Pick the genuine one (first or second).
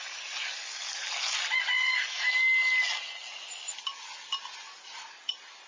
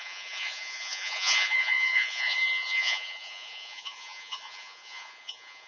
first